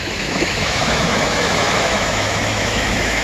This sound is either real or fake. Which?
fake